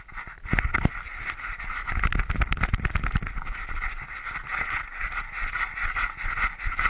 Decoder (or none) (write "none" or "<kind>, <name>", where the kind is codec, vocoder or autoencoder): none